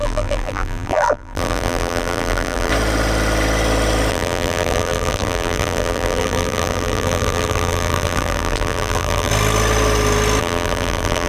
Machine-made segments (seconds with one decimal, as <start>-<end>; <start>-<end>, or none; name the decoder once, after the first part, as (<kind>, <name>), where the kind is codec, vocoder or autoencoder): 0.0-2.7 (vocoder, BigVGAN v2); 4.1-9.3; 10.4-11.3